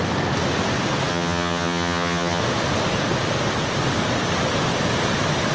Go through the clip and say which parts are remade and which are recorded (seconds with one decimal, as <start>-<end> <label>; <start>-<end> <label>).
0.0-1.1 recorded; 1.1-2.4 remade; 2.4-5.5 recorded